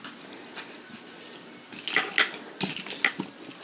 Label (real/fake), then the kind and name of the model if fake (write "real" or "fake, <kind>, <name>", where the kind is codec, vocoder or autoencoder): real